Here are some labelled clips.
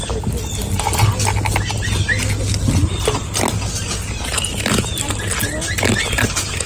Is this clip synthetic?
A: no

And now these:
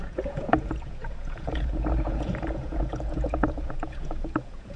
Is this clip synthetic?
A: yes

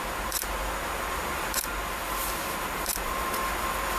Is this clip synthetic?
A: no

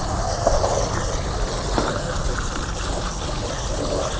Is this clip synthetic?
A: no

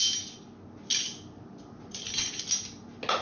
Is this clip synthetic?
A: no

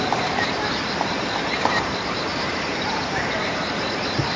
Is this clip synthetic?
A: yes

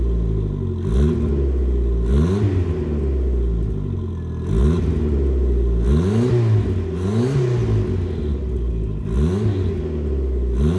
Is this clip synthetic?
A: no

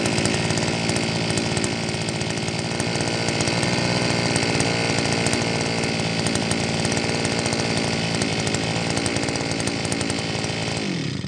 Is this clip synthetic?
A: no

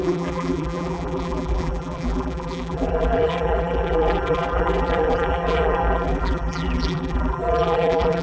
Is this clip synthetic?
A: yes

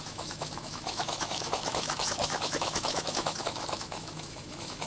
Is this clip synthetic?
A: yes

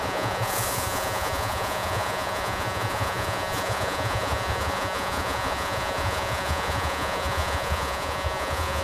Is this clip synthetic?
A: yes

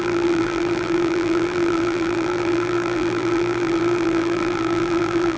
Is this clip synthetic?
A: yes